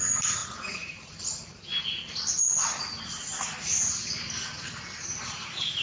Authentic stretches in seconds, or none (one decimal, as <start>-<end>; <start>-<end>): 0.0-0.4; 1.1-5.8